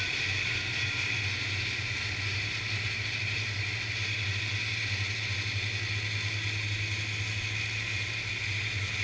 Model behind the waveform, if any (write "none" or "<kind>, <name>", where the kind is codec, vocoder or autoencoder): none